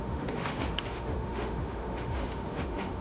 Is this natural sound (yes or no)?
no